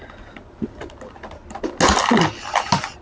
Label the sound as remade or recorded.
recorded